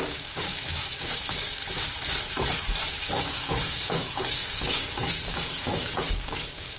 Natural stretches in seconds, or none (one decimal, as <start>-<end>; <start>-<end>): 1.6-3.1